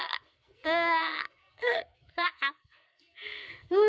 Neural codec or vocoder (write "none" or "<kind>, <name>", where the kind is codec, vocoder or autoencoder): codec, SNAC